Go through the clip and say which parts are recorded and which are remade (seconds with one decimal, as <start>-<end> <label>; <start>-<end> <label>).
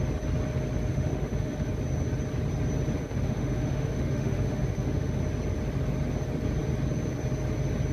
0.0-0.9 recorded; 0.9-1.7 remade; 1.7-3.0 recorded; 3.0-5.2 remade; 5.2-7.9 recorded